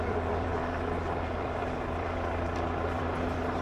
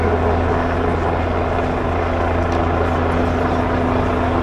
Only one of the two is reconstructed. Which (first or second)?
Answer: first